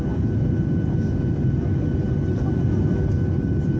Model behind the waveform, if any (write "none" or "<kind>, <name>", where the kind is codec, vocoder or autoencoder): none